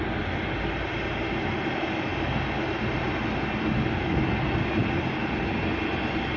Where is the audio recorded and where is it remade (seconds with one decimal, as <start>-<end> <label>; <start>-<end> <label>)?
0.0-6.4 recorded